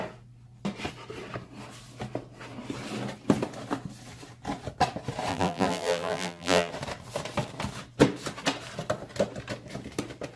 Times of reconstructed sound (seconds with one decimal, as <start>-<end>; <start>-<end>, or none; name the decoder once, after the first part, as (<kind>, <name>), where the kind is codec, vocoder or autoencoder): 5.3-6.7 (vocoder, BigVGAN v2)